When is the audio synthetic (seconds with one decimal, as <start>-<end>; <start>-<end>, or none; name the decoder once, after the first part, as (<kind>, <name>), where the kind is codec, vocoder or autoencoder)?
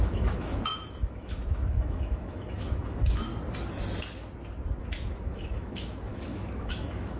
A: 0.0-3.3 (autoencoder, DAC-VAE); 4.8-7.2